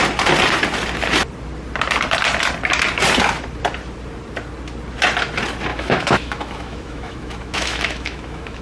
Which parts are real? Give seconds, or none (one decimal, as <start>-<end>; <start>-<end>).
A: 0.0-5.7